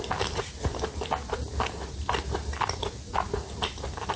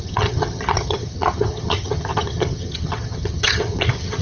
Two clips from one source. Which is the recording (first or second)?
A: first